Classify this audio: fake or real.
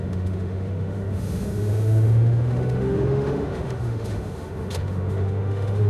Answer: fake